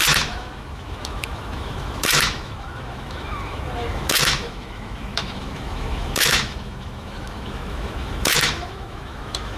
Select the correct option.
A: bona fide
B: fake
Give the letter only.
B